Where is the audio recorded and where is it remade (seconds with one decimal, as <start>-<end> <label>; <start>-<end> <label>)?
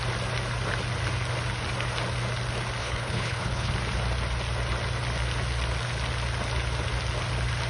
0.0-2.8 recorded; 2.8-3.7 remade; 3.7-7.7 recorded